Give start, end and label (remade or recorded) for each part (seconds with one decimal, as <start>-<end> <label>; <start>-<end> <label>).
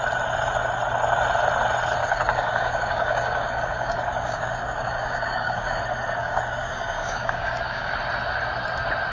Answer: 0.0-2.0 recorded; 2.0-5.8 remade; 5.8-6.2 recorded; 6.2-7.9 remade; 7.9-9.1 recorded